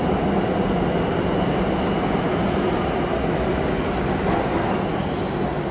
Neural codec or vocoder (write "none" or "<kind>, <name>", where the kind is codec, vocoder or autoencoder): none